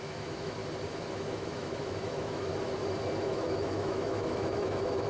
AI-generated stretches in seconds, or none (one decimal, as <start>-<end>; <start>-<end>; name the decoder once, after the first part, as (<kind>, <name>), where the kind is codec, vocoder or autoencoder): 0.0-0.6 (autoencoder, DAC-VAE); 1.1-2.5; 3.2-5.1